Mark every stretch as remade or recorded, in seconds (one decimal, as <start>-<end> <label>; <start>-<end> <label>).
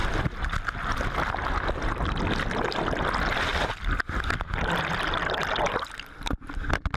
0.0-7.0 recorded